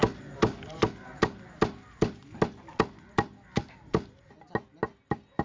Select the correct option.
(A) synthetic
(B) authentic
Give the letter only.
B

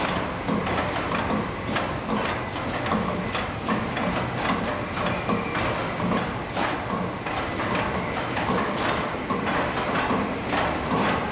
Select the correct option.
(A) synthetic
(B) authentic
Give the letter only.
B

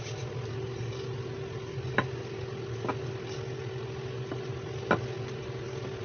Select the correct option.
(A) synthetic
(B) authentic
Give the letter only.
B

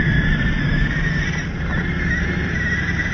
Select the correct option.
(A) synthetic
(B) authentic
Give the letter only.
B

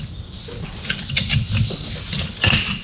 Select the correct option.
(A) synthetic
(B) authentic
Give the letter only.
B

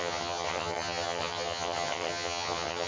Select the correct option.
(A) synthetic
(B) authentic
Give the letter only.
A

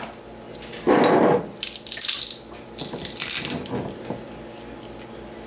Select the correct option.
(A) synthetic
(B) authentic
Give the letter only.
B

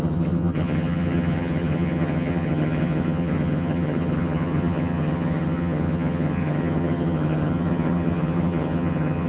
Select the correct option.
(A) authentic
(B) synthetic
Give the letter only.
B